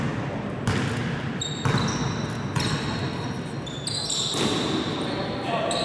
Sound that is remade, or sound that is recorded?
recorded